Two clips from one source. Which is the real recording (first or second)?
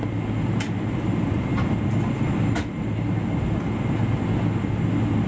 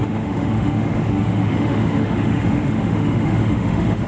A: first